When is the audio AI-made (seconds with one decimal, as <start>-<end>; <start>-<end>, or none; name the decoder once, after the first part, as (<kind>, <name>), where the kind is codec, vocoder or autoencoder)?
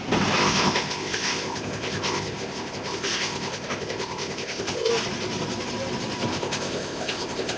0.4-4.9 (codec, ZipCodec); 6.3-7.6